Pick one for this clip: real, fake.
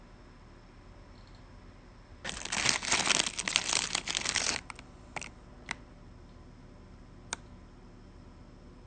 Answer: real